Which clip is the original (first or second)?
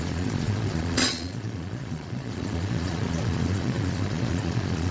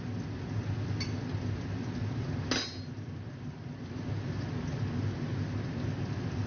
second